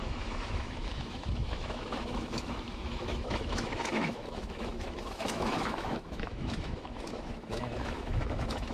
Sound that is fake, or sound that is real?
fake